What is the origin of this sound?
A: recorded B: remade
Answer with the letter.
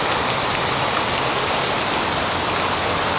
A